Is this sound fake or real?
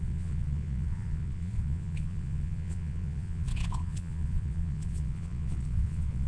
fake